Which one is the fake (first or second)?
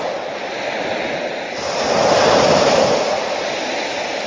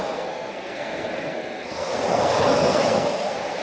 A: second